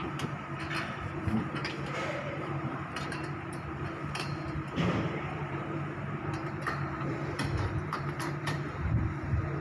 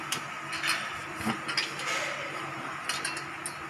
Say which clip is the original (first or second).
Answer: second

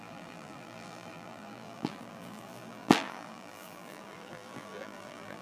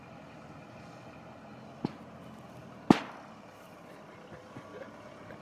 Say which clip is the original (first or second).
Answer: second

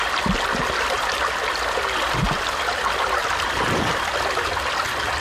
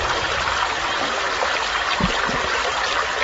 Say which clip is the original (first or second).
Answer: first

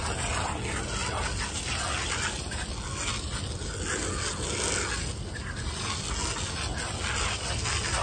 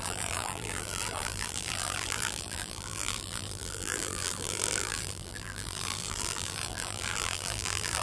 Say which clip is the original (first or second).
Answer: first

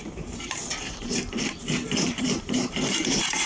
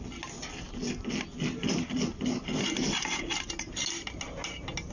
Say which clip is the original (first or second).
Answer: second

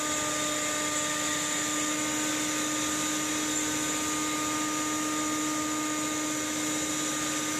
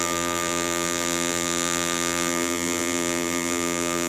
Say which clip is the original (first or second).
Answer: first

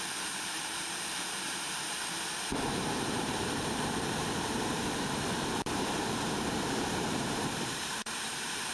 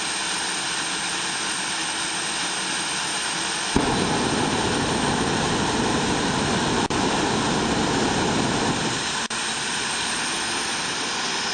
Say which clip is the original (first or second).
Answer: second